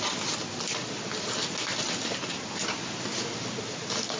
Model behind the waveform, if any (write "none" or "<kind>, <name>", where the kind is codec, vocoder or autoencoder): none